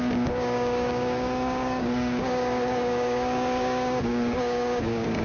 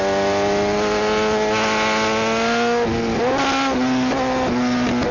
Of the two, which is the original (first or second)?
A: second